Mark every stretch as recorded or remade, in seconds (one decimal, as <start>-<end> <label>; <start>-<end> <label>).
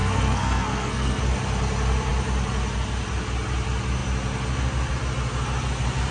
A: 0.0-1.2 remade; 1.2-6.1 recorded